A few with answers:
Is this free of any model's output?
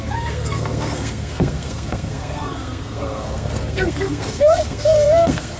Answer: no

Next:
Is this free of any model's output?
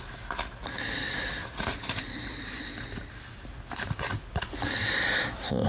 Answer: yes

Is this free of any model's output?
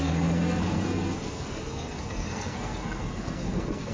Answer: no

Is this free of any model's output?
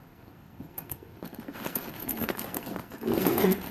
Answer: no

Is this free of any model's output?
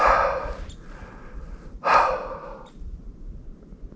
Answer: yes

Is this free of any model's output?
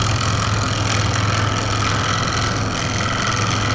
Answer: yes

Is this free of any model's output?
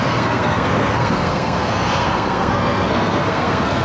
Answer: no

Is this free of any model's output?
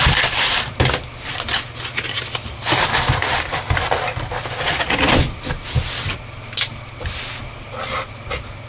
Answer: yes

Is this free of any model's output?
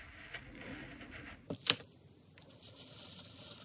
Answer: yes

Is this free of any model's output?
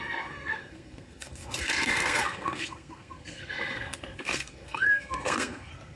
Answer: no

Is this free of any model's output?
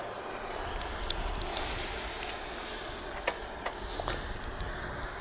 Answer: yes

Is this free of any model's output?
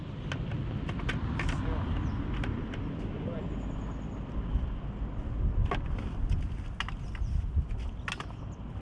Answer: yes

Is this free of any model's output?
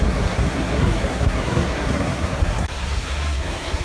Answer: no